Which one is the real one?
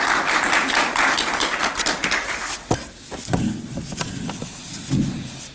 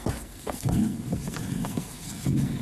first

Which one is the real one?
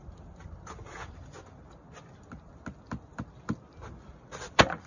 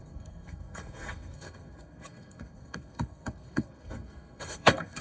first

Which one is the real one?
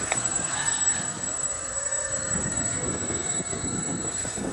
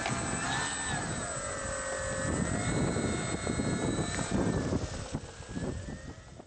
second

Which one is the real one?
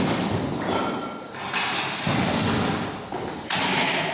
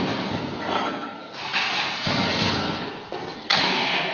first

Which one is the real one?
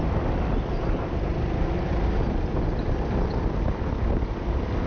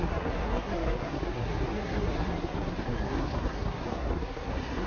first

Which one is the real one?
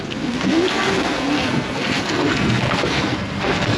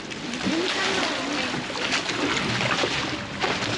second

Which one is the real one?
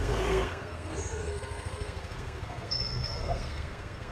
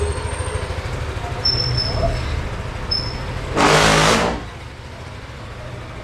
second